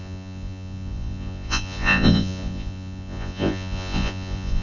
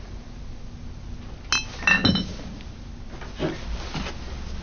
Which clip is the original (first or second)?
second